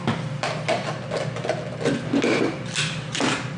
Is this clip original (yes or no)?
yes